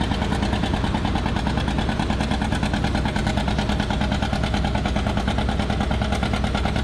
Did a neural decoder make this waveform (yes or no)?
no